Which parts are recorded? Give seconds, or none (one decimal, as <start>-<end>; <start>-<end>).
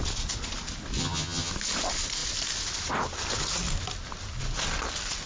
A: 0.0-1.0; 1.5-5.3